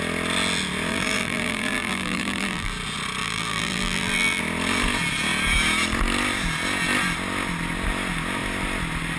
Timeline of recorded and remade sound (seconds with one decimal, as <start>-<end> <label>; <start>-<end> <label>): 0.0-0.9 recorded; 0.9-2.7 remade; 2.7-3.2 recorded; 3.2-4.4 remade; 4.4-9.2 recorded